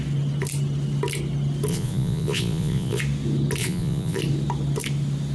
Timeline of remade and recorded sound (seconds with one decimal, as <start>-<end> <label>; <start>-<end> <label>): 0.0-1.7 recorded; 1.7-3.0 remade; 3.0-3.6 recorded; 3.6-4.2 remade; 4.2-5.3 recorded